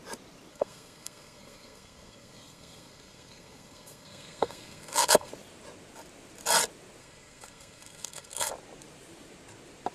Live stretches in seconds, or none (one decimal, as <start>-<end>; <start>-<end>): 0.0-0.5; 5.3-7.0; 8.5-9.9